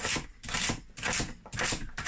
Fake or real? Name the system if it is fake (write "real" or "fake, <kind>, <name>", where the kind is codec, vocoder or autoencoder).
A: real